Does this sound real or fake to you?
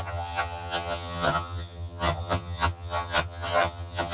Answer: fake